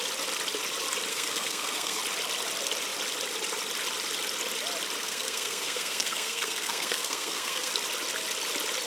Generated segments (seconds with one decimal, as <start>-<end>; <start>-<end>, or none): 1.1-2.0; 5.0-7.7